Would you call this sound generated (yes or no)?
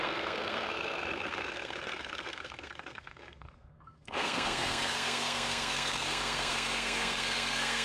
yes